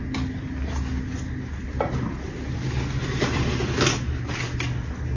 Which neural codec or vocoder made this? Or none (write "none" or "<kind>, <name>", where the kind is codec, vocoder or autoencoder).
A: none